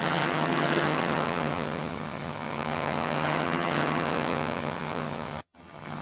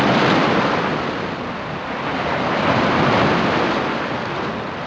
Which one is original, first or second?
second